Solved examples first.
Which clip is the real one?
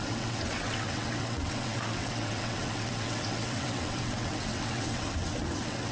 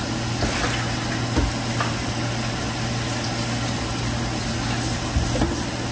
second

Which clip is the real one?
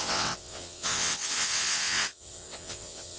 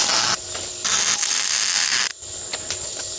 second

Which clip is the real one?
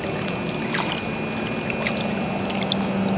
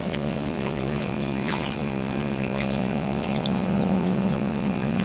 first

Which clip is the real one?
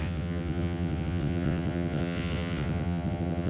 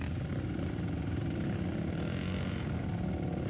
second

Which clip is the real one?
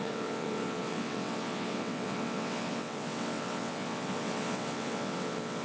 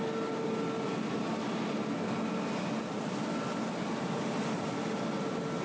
second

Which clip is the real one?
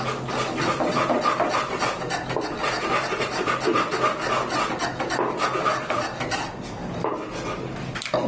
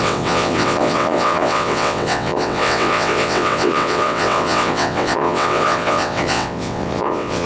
first